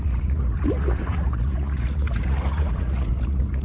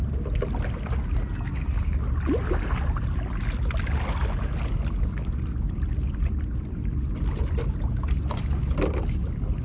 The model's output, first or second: first